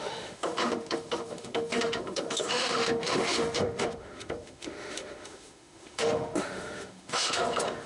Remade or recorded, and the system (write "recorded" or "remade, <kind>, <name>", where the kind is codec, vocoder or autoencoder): remade, autoencoder, DAC-VAE